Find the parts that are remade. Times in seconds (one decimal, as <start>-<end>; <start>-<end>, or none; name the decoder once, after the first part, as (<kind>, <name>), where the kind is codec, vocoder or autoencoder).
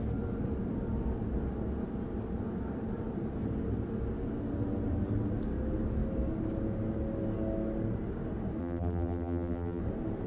8.6-9.8 (vocoder, BigVGAN v2)